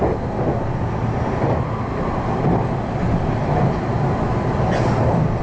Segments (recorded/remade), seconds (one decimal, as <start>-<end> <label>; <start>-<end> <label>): 0.0-5.4 recorded